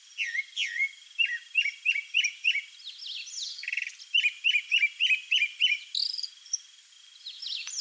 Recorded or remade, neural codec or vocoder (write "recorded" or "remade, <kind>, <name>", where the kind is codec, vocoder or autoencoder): recorded